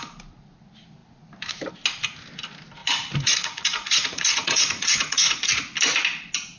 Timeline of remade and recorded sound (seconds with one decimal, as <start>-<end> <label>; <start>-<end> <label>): 0.0-2.8 recorded; 2.8-5.5 remade; 5.5-6.6 recorded